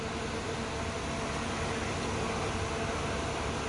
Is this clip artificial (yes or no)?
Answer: no